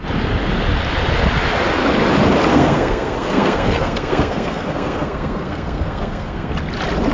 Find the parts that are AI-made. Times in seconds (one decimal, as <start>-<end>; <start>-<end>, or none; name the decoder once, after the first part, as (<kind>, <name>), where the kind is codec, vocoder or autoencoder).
2.5-6.5 (codec, SNAC)